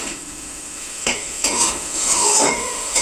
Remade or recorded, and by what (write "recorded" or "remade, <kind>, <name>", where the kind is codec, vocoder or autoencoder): remade, autoencoder, DAC-VAE